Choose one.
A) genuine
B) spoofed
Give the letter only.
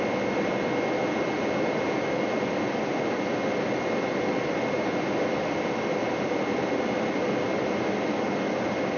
A